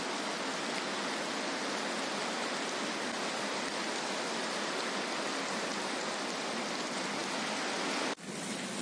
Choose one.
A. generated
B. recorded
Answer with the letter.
B